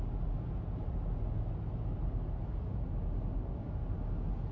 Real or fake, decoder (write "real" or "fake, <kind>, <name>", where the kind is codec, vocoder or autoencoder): real